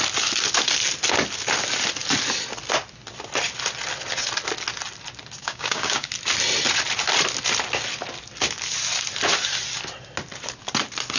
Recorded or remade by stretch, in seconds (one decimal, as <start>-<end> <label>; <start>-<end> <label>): 0.0-5.4 recorded; 5.4-6.1 remade; 6.1-11.2 recorded

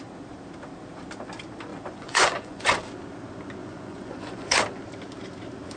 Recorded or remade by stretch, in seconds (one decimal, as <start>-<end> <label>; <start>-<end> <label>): 0.0-1.7 recorded; 1.7-2.8 remade; 2.8-3.6 recorded; 3.6-4.6 remade; 4.6-5.8 recorded

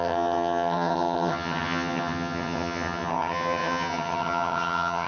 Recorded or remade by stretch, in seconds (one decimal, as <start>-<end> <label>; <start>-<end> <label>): 0.0-5.1 remade